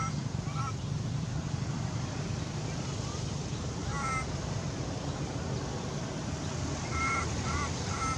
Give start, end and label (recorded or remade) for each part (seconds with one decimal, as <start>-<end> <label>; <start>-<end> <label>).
0.0-3.8 remade; 3.8-5.7 recorded; 5.7-8.2 remade